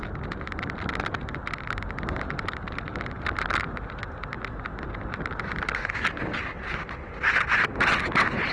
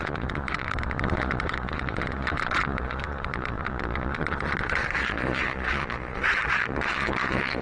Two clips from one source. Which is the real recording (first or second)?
first